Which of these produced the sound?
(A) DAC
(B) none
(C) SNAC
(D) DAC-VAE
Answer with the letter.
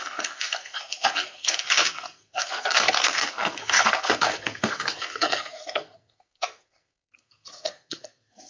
C